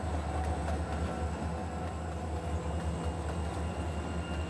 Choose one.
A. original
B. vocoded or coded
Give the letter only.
A